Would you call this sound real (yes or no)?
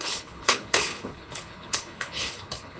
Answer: no